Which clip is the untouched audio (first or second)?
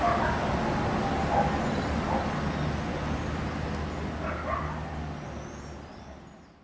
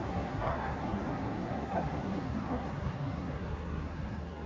first